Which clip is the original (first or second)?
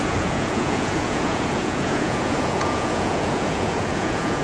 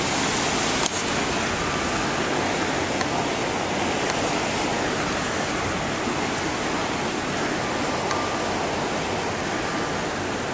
second